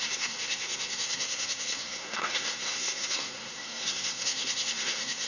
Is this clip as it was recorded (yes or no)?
no